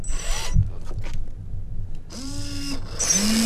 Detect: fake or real real